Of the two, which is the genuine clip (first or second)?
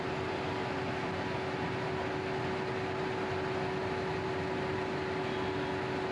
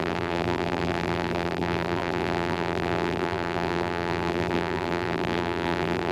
first